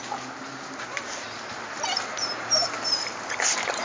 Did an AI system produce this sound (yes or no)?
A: no